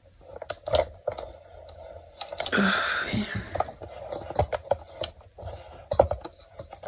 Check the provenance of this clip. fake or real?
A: real